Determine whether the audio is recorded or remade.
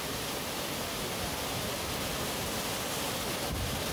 recorded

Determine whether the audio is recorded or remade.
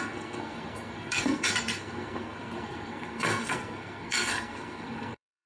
remade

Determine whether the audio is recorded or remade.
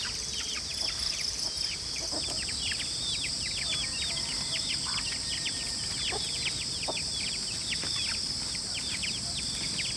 recorded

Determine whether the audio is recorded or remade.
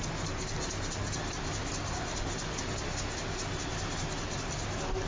recorded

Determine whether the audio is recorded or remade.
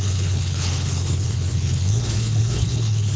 remade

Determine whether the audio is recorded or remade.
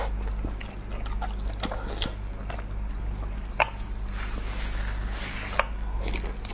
recorded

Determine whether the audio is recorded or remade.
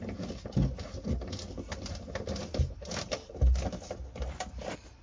recorded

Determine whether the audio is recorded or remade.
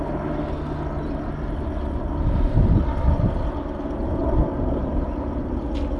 recorded